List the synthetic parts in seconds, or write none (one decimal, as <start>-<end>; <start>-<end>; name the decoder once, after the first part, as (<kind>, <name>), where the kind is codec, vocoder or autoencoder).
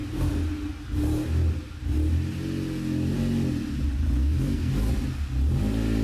4.2-4.7 (codec, SNAC)